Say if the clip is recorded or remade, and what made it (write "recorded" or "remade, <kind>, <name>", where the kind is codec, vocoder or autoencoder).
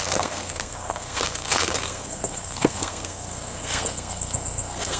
remade, codec, SNAC